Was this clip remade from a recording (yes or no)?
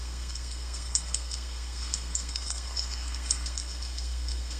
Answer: yes